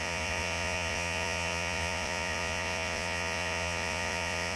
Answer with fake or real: fake